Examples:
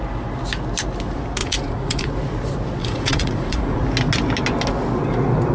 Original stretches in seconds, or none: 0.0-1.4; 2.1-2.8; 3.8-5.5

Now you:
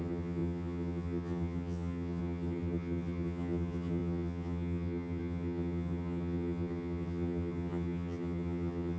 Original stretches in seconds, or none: none